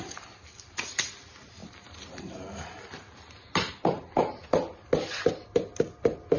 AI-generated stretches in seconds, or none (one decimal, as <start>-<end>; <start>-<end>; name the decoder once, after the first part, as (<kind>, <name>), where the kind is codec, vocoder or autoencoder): none